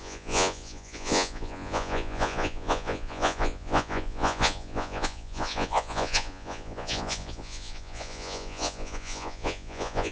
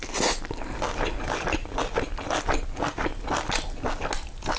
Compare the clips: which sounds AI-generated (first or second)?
first